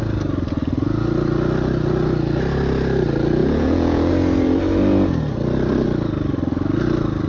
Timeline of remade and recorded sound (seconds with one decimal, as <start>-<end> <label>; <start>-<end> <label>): 0.0-3.4 recorded; 3.4-4.1 remade; 4.1-7.3 recorded